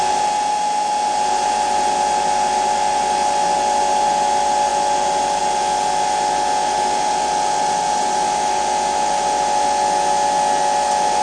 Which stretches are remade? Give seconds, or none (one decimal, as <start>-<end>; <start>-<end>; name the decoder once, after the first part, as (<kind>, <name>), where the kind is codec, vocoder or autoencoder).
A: none